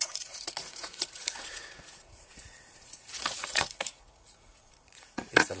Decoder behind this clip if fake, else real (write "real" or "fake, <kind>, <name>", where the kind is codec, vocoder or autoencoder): fake, vocoder, Vocos